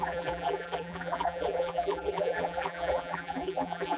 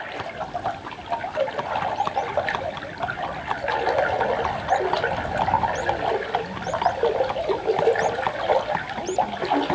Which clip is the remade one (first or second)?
first